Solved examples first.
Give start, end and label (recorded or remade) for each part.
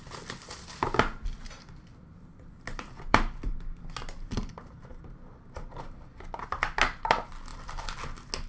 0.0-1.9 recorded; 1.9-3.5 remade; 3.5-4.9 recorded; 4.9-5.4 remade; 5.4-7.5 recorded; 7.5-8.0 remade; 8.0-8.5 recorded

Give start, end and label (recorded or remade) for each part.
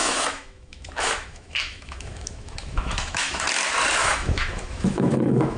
0.0-3.4 remade; 3.4-4.0 recorded; 4.0-5.6 remade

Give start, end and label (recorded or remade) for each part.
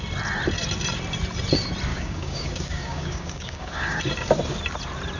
0.0-1.9 recorded; 1.9-4.0 remade; 4.0-5.2 recorded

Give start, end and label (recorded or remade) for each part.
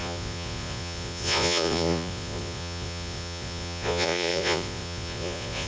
0.0-5.7 remade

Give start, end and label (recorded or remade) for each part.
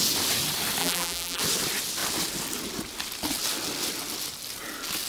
0.0-0.8 recorded; 0.8-1.4 remade; 1.4-5.1 recorded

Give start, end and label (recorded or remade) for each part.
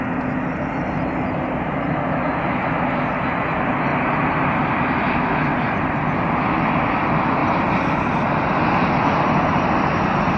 0.0-10.4 recorded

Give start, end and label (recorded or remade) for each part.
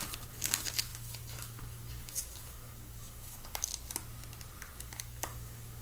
0.0-3.7 remade; 3.7-4.8 recorded; 4.8-5.8 remade